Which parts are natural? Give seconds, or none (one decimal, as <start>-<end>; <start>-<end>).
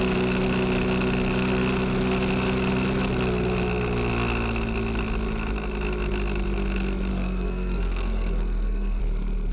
0.0-7.1; 9.0-9.5